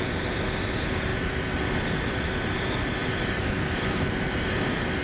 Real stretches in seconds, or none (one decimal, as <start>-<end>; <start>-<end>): 0.0-5.0